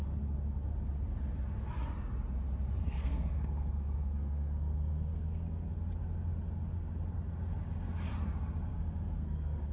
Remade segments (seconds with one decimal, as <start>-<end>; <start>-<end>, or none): 2.8-5.7; 8.7-9.7